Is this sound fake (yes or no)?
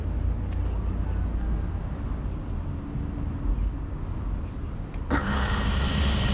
no